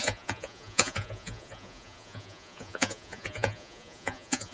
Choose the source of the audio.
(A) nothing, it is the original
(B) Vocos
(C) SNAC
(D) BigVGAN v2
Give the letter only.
B